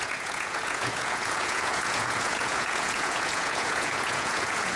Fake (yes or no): yes